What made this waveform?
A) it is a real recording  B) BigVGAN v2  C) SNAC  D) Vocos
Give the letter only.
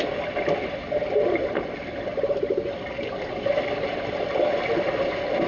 A